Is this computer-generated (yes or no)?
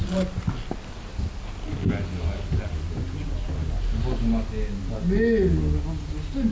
no